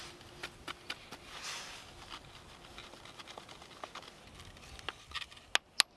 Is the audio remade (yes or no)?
no